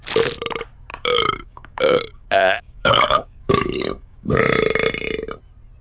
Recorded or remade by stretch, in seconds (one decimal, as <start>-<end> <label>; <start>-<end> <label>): 0.0-0.9 recorded; 0.9-4.4 remade; 4.4-5.8 recorded